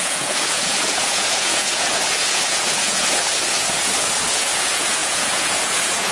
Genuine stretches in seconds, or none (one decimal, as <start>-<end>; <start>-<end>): none

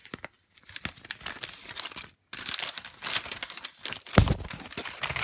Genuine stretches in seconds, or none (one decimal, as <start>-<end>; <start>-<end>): 0.0-5.2

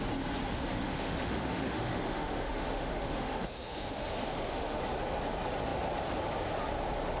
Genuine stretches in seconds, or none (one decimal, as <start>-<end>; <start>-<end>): 0.0-0.5; 4.8-7.2